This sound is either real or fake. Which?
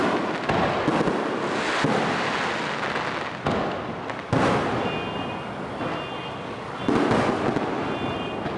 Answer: real